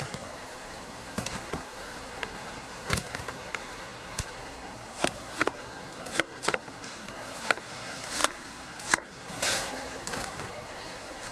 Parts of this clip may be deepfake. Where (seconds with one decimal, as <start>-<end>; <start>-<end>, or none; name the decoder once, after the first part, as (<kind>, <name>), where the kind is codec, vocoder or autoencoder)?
0.0-11.3 (codec, SNAC)